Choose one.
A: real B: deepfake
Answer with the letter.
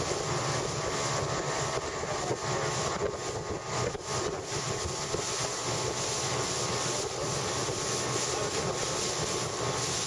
A